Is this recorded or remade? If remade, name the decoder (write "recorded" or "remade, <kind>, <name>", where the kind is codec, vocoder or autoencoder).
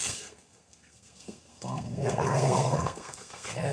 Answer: remade, codec, SNAC